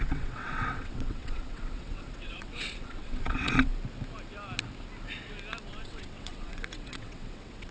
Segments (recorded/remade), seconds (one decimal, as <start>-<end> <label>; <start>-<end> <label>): 0.0-3.7 remade; 3.7-5.7 recorded; 5.7-7.7 remade